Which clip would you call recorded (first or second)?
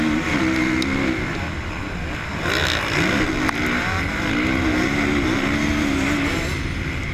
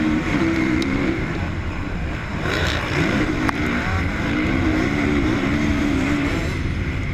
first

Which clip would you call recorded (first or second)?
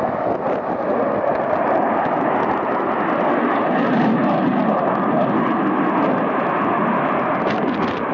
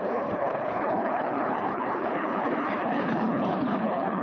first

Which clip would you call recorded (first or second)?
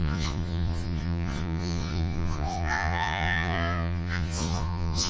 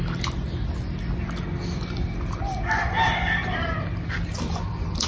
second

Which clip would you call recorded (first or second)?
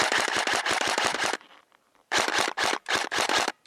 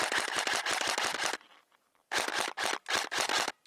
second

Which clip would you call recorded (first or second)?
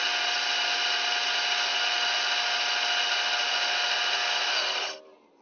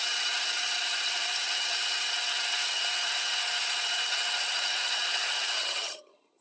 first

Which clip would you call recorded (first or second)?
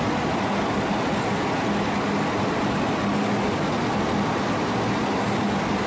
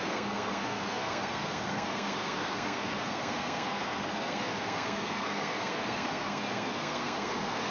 first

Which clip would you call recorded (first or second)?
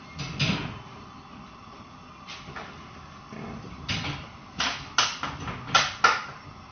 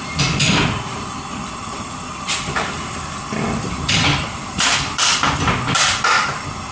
first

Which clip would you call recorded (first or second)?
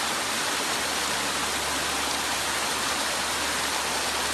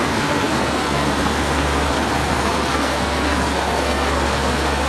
first